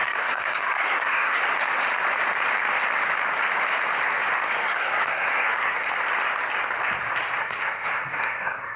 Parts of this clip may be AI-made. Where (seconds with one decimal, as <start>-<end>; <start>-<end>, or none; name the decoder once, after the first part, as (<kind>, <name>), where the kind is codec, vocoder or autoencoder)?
0.0-1.4 (codec, SNAC); 4.6-5.9; 7.4-8.8